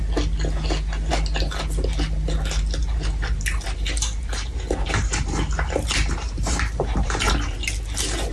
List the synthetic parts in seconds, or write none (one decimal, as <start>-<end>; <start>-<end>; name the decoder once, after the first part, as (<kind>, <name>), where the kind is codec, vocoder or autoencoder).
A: 2.8-7.8 (vocoder, BigVGAN v2)